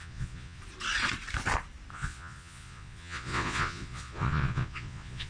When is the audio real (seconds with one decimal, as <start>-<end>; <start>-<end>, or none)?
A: 0.6-1.9